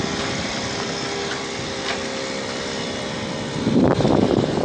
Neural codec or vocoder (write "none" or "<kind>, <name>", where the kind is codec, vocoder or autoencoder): none